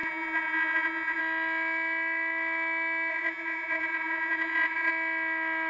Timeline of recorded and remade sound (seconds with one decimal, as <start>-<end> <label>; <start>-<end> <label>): 0.0-1.2 remade; 1.2-3.1 recorded; 3.1-4.9 remade; 4.9-5.7 recorded